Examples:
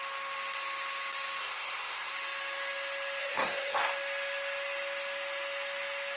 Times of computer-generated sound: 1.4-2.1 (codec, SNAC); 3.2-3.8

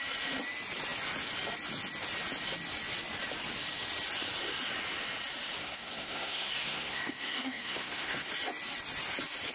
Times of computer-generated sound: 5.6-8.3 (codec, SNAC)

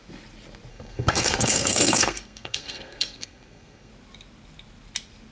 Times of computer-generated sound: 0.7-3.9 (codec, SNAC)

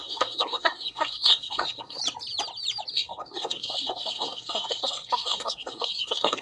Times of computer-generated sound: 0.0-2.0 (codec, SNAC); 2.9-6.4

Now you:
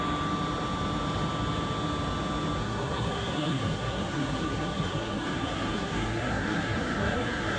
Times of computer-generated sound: 2.6-7.6 (codec, SNAC)

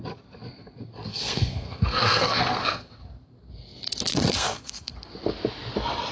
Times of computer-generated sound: 1.1-2.9 (codec, SNAC); 4.1-5.1

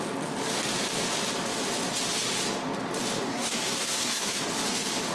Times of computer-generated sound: 3.3-4.4 (codec, SNAC)

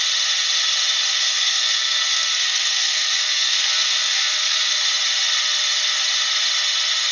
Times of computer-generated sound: 1.2-4.8 (codec, SNAC)